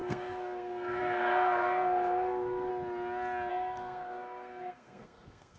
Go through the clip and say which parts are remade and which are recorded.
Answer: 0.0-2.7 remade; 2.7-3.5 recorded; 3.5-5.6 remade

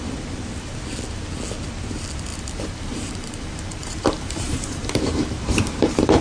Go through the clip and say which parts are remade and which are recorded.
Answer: 0.0-2.3 recorded; 2.3-6.2 remade